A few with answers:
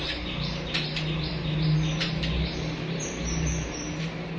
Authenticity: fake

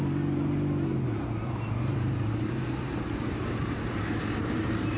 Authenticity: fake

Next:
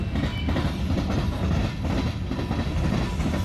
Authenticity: real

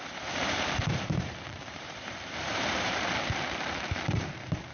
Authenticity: fake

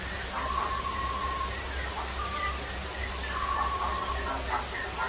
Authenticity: fake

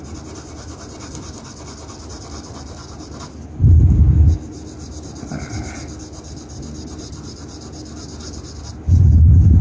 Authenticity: real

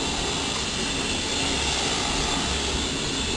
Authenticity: real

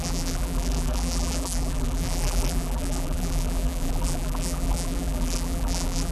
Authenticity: fake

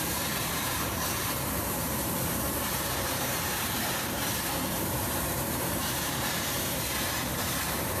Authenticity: fake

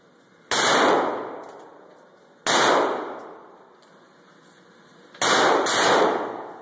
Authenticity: real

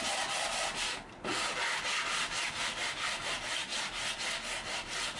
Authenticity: real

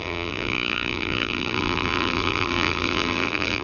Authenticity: fake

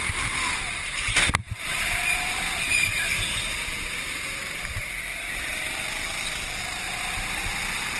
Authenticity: fake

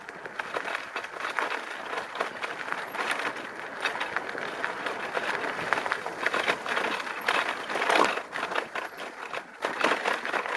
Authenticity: real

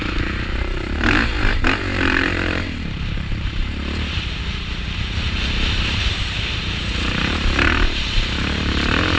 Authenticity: fake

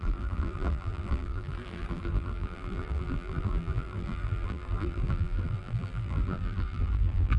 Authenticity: fake